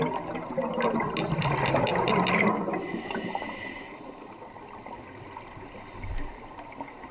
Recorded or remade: recorded